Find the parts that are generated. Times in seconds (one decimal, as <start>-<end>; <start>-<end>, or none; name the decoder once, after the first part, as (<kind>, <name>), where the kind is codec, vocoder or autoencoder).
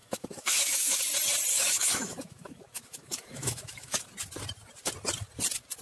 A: 0.0-1.0 (autoencoder, DAC-VAE); 1.5-4.0